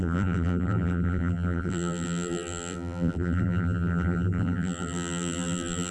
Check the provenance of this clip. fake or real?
fake